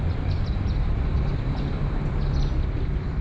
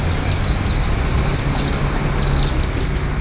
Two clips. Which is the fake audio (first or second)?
first